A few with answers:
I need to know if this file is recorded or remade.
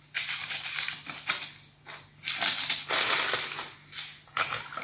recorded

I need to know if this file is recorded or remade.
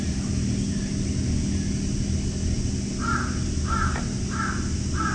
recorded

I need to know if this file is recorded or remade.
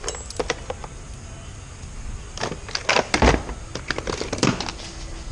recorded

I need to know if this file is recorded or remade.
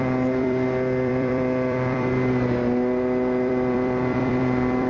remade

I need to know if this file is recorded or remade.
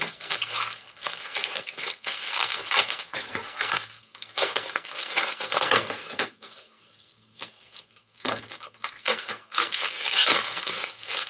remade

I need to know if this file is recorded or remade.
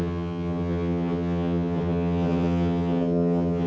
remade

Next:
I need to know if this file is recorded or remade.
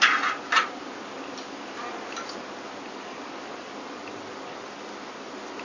recorded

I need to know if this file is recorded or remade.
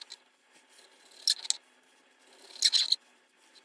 recorded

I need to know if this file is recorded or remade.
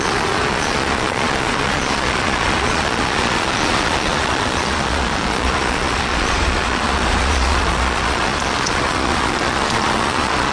remade